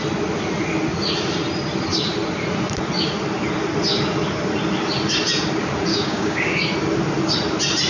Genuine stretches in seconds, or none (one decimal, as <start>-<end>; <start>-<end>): 0.0-5.9; 6.6-7.9